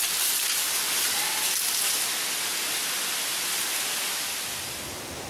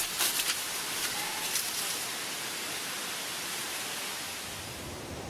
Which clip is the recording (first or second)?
first